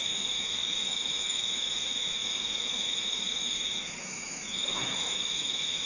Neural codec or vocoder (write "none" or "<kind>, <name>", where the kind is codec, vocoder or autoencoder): autoencoder, DAC-VAE